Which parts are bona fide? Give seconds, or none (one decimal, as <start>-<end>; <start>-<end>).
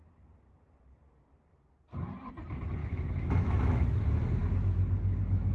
0.0-2.8; 4.0-4.4